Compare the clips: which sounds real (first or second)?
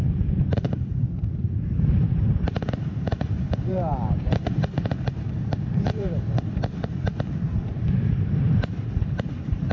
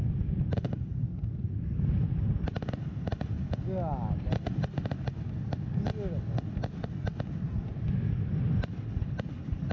second